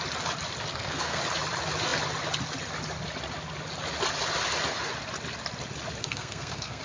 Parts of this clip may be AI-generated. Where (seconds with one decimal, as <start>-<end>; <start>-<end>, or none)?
0.7-1.2; 6.0-6.8